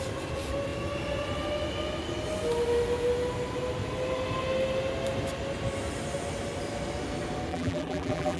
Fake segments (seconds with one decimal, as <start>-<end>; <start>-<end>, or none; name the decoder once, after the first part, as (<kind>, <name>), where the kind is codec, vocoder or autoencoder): 7.5-8.4 (vocoder, BigVGAN v2)

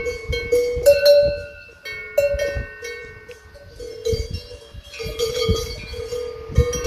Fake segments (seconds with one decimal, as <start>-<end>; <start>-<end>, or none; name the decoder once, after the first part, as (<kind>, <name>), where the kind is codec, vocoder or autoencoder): none

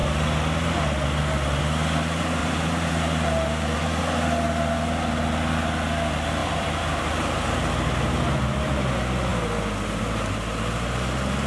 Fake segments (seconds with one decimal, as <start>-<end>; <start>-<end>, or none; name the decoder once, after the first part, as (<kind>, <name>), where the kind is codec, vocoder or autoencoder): 2.4-4.0 (vocoder, BigVGAN v2); 6.4-7.1

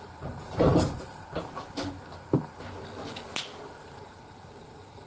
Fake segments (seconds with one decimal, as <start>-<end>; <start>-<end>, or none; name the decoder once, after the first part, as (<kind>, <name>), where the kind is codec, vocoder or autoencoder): 0.0-0.7 (vocoder, BigVGAN v2); 3.8-5.1